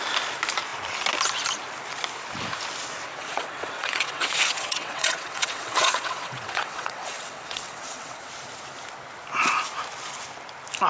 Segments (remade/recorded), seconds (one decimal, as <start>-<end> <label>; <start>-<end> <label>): 0.0-3.2 recorded; 3.2-8.3 remade; 8.3-10.9 recorded

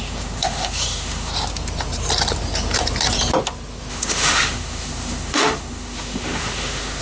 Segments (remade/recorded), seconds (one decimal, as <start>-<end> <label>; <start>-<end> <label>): 0.0-1.3 remade; 1.3-3.9 recorded; 3.9-7.0 remade

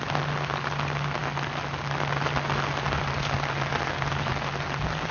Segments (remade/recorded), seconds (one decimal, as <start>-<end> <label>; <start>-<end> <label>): 0.0-5.1 recorded

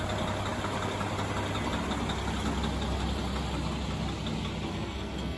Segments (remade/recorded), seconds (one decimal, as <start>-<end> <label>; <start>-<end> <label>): 0.0-4.7 recorded; 4.7-5.4 remade

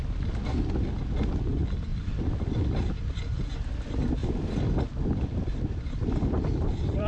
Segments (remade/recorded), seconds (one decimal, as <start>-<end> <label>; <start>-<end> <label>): 0.0-1.9 recorded; 1.9-2.9 remade; 2.9-4.2 recorded; 4.2-7.1 remade